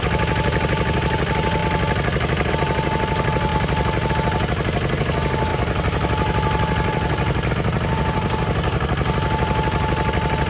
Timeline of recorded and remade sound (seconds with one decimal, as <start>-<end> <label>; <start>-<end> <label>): 0.0-5.5 recorded; 5.5-7.5 remade; 7.5-10.5 recorded